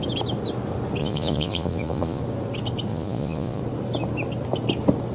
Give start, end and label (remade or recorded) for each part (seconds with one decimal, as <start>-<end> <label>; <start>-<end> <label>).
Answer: 0.0-1.0 recorded; 1.0-2.2 remade; 2.2-2.9 recorded; 2.9-3.6 remade; 3.6-5.1 recorded